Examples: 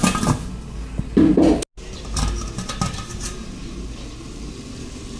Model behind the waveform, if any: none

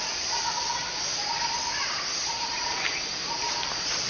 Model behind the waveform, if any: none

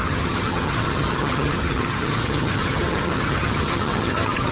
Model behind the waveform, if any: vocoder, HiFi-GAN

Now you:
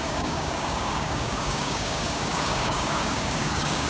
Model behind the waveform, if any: codec, DAC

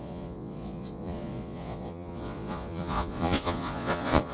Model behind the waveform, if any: vocoder, Vocos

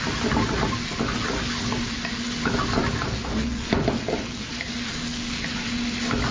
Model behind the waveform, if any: none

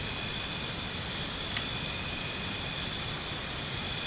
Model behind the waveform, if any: none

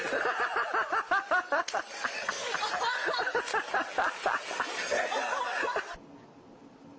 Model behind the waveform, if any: none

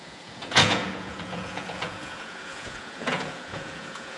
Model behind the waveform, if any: vocoder, Vocos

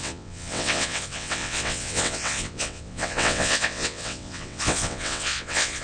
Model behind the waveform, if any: vocoder, WaveNeXt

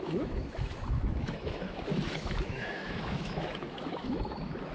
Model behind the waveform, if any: autoencoder, DAC-VAE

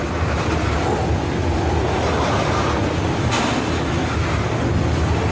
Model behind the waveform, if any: none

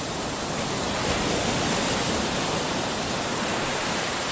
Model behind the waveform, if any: none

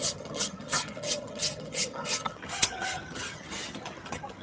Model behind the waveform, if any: vocoder, HiFi-GAN